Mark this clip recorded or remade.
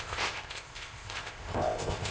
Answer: remade